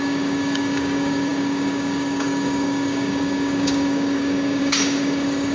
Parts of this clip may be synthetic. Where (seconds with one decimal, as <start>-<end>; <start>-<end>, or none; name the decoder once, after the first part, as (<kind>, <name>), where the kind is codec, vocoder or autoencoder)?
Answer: 0.0-5.5 (codec, DAC)